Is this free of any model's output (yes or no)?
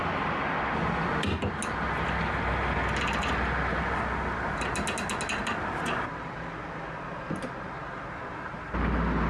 yes